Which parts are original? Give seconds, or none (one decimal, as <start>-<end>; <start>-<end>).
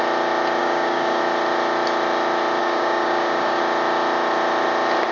0.0-0.6; 1.2-2.6; 3.6-5.1